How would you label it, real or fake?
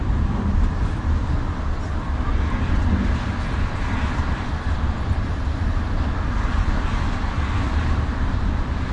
real